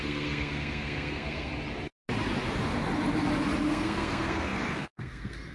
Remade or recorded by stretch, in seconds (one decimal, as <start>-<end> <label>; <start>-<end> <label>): 0.0-1.5 remade; 1.5-3.7 recorded; 3.7-5.5 remade